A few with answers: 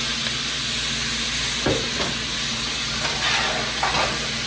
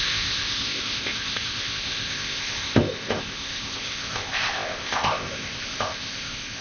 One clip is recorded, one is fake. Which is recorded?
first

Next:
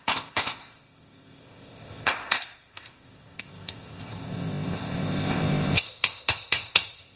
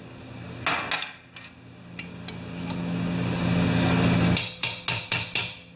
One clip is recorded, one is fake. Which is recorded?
second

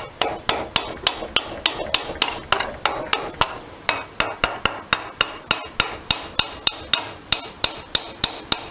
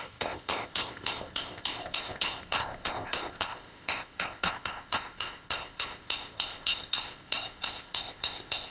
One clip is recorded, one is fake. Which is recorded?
first